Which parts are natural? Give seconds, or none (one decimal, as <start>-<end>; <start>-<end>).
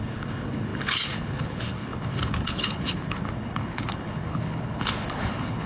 none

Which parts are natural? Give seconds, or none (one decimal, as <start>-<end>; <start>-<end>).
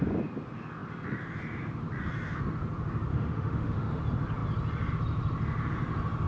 0.0-3.1; 4.0-6.3